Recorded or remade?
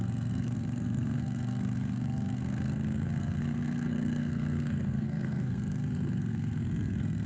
remade